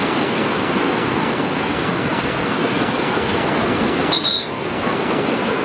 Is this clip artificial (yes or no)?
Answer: yes